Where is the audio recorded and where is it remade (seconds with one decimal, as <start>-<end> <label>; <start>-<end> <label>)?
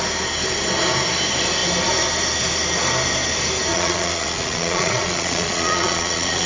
0.0-3.7 recorded; 3.7-6.5 remade